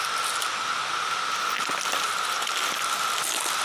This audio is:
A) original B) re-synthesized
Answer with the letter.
A